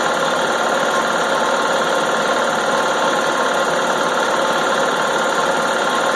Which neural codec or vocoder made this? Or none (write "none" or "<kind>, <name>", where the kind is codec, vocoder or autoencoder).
none